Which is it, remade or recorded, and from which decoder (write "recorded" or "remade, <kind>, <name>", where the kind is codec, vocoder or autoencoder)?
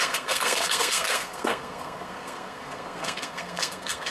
remade, codec, SNAC